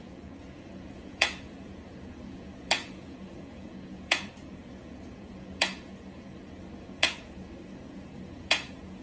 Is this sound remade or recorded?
remade